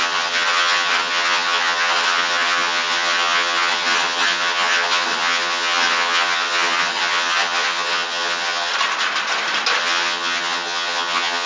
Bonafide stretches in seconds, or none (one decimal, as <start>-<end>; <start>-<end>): 8.7-9.8